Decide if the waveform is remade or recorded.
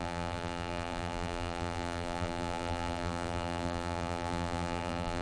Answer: remade